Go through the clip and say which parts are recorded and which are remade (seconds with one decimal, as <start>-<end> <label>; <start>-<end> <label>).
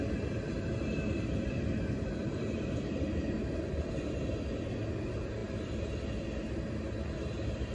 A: 0.0-7.7 recorded